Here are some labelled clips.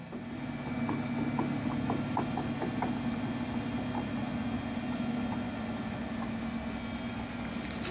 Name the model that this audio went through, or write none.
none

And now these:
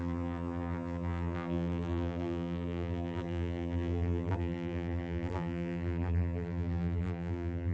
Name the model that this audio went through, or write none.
vocoder, BigVGAN v2